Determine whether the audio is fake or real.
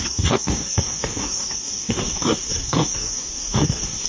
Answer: fake